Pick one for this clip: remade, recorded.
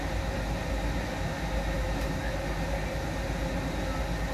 recorded